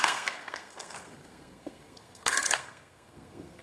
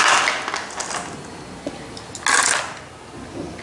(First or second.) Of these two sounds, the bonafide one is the second